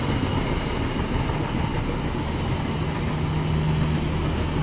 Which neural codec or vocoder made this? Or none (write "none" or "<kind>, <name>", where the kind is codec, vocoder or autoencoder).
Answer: none